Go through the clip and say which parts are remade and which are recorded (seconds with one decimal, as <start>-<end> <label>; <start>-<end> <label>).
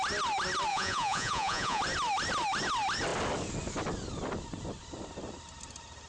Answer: 0.0-0.7 recorded; 0.7-1.8 remade; 1.8-6.1 recorded